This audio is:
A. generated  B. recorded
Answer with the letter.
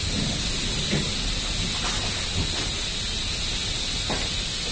B